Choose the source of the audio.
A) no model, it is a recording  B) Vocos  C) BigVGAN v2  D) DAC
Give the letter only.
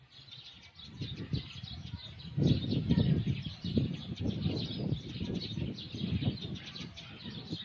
C